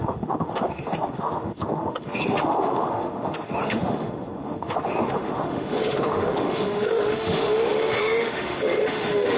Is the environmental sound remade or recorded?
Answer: remade